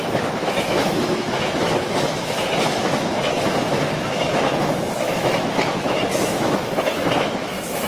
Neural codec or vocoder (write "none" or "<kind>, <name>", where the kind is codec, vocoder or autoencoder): autoencoder, DAC-VAE